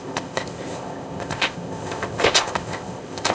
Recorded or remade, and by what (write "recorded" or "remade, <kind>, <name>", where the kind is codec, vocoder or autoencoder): remade, codec, ZipCodec